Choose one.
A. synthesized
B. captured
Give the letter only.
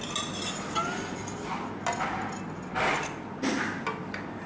B